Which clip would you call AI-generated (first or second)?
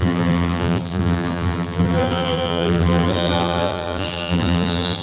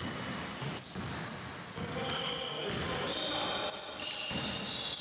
first